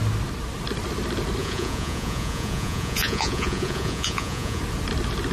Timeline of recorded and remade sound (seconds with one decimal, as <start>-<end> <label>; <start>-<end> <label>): 0.0-1.4 recorded; 1.4-4.6 remade; 4.6-5.3 recorded